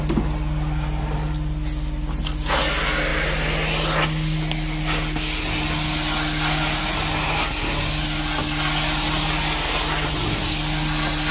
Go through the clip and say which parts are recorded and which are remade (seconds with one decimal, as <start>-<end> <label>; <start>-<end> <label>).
0.0-11.3 recorded